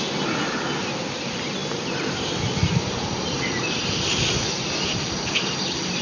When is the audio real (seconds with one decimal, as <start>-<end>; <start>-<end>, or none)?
0.0-6.0